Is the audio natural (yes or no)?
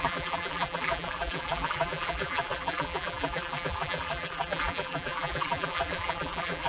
no